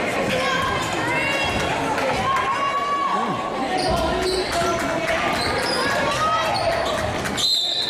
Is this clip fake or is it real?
real